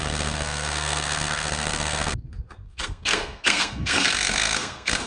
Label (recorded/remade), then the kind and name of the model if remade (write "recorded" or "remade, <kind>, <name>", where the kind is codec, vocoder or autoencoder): remade, codec, SNAC